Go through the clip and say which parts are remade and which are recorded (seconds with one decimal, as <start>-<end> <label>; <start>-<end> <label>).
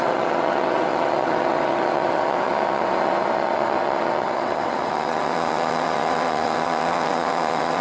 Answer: 0.0-7.8 remade